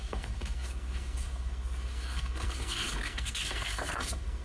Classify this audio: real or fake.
fake